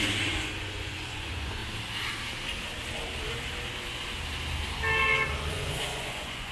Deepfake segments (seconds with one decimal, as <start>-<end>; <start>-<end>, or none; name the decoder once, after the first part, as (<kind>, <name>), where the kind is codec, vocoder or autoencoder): 0.0-1.6 (vocoder, Vocos); 5.5-6.5